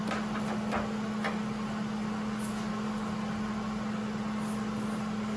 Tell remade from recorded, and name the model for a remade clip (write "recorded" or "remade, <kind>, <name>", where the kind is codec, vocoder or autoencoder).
recorded